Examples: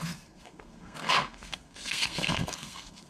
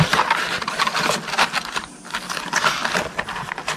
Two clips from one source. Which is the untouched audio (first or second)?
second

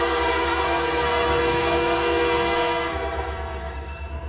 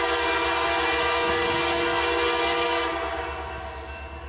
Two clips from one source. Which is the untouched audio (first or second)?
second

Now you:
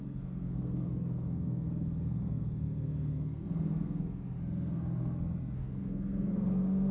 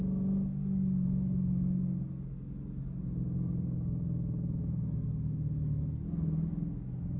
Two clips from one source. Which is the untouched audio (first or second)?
second